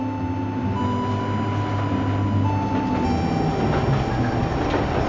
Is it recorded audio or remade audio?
recorded